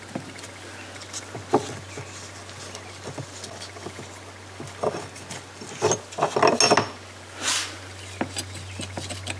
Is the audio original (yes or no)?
yes